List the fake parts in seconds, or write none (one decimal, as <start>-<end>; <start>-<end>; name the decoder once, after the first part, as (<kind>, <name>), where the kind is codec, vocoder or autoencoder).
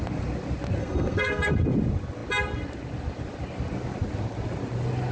0.8-1.5 (codec, SNAC)